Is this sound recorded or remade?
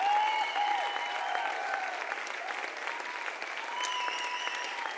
recorded